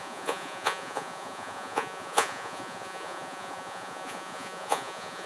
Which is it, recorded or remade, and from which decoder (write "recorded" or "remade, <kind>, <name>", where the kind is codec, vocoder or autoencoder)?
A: remade, vocoder, Vocos